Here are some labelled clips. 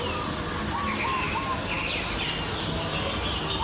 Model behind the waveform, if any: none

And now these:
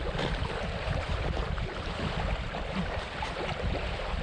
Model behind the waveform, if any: vocoder, BigVGAN v2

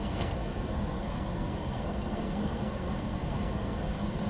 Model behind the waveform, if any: codec, SNAC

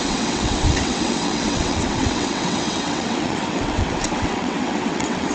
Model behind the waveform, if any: vocoder, WaveNeXt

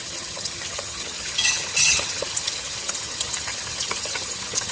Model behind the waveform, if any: vocoder, HiFi-GAN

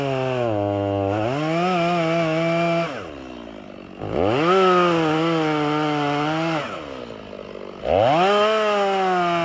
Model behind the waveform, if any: none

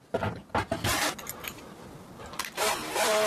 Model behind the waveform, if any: none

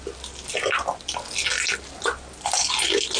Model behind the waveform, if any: none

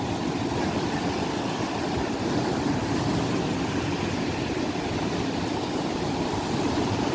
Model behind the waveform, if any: none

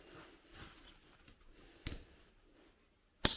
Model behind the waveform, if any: none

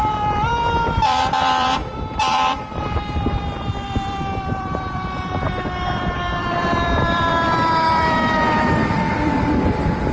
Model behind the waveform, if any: vocoder, BigVGAN v2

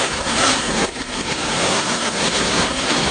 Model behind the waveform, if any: codec, SNAC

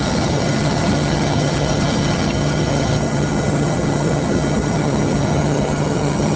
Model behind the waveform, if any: vocoder, HiFi-GAN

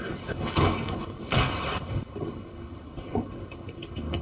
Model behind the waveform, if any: codec, HILCodec